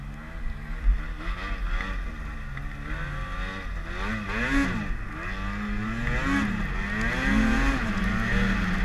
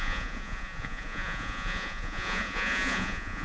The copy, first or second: second